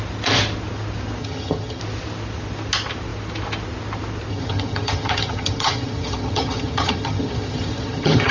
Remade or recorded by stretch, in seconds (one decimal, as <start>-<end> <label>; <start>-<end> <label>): 0.0-1.2 recorded; 1.2-1.8 remade; 1.8-4.3 recorded; 4.3-8.3 remade